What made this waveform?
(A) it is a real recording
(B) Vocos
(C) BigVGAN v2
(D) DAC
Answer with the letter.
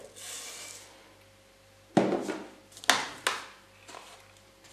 A